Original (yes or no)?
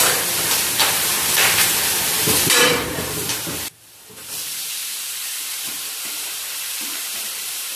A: no